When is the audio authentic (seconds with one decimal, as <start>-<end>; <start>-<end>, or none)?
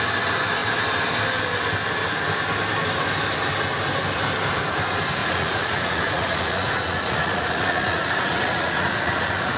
0.0-5.2